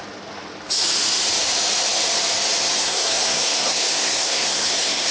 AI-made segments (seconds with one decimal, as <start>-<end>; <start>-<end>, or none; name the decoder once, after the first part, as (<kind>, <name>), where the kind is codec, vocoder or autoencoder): 2.8-5.1 (codec, SNAC)